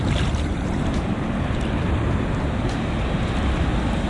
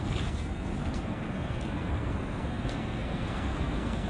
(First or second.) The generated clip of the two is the second